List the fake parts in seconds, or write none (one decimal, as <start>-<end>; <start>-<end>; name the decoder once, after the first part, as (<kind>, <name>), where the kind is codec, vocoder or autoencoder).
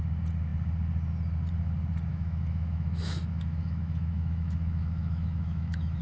2.1-6.0 (autoencoder, DAC-VAE)